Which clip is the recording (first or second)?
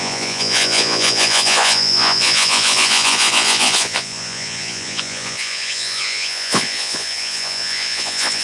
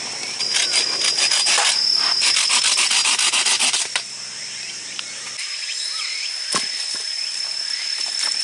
second